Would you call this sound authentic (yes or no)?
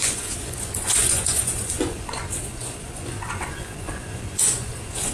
no